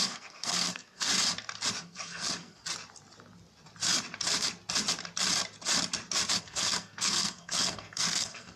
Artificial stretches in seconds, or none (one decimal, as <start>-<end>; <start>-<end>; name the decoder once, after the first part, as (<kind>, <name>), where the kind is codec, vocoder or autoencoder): 0.0-1.1 (codec, SNAC); 1.8-2.6; 6.4-8.6